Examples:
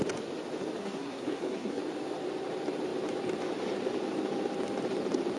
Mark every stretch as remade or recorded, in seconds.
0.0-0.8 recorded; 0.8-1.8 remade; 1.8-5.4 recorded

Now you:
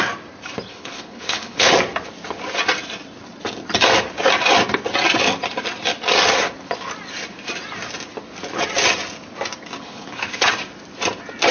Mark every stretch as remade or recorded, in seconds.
0.0-0.7 recorded; 0.7-1.7 remade; 1.7-9.8 recorded; 9.8-10.5 remade; 10.5-11.5 recorded